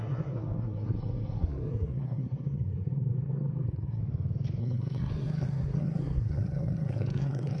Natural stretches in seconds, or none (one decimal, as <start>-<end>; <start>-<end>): 4.0-4.6